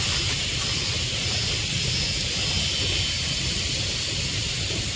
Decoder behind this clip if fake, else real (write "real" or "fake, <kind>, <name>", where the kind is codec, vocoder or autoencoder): real